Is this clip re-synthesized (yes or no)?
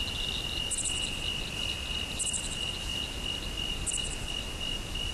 no